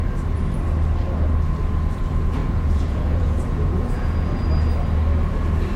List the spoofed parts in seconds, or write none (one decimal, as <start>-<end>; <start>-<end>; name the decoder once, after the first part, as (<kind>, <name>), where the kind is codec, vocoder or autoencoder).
2.4-4.5 (vocoder, Vocos)